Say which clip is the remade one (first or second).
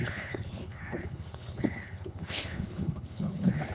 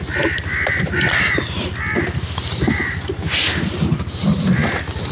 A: first